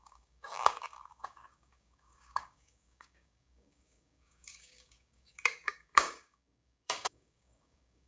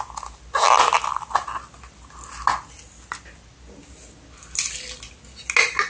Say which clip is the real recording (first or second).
second